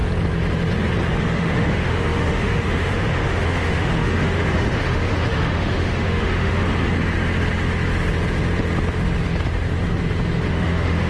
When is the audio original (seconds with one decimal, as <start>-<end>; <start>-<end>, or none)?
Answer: 0.0-1.2; 6.6-10.5